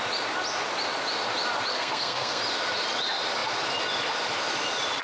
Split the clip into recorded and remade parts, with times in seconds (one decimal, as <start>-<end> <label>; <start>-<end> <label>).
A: 0.0-1.7 recorded; 1.7-2.4 remade; 2.4-5.0 recorded